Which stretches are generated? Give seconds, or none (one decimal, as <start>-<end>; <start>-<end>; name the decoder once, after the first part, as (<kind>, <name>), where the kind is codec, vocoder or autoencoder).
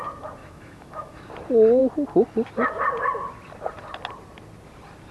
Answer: 0.4-1.3 (autoencoder, DAC-VAE)